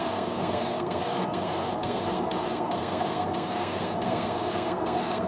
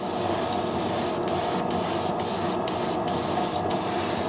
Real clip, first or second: second